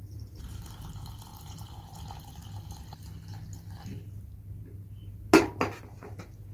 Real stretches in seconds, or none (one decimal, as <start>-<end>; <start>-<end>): 0.6-1.3; 1.8-6.5

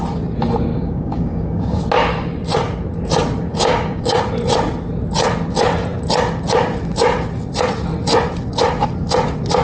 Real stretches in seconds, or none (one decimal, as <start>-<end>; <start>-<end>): 0.0-0.7; 1.8-3.5; 4.2-9.6

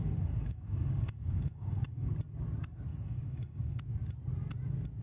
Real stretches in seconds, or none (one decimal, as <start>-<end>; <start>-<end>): 2.1-2.9; 3.8-5.0

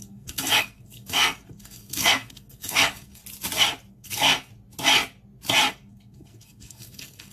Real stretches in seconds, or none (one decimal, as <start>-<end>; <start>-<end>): 3.2-3.9; 4.5-5.7

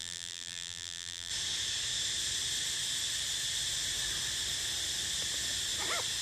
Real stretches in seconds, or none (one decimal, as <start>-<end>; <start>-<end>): 1.3-6.2

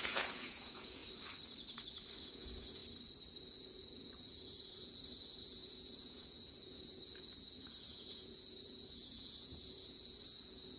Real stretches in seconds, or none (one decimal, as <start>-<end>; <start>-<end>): 1.0-2.2; 2.8-3.4

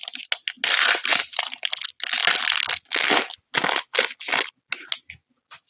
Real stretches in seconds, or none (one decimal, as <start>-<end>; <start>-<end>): 0.0-1.1; 1.7-5.7